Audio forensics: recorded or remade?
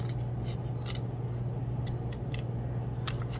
recorded